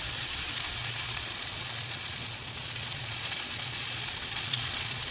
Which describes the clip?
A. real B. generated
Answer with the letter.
B